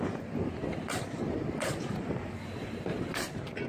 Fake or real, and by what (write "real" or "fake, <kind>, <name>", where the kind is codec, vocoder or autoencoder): real